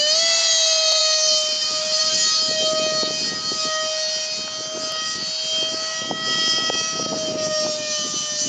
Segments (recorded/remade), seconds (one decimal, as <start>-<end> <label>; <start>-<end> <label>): 0.0-8.5 recorded